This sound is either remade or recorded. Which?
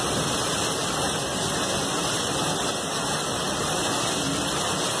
recorded